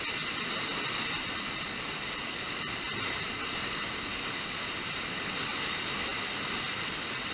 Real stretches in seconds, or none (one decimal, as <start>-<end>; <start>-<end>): 0.0-7.3